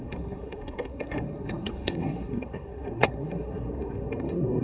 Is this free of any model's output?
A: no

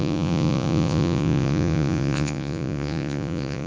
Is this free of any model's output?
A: no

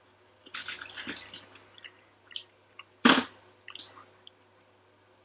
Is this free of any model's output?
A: yes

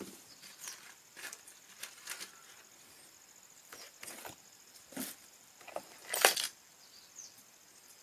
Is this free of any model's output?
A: no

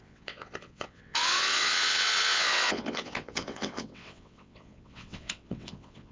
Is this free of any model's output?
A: no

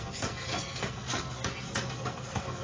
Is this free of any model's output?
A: no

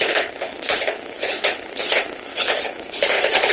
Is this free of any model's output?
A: no